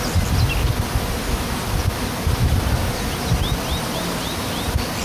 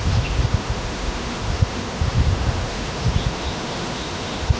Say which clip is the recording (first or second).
first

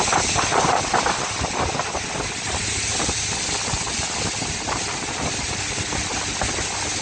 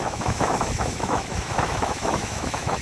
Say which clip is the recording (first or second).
first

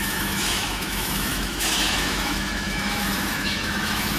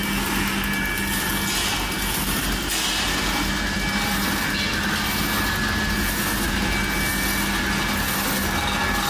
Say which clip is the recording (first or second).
second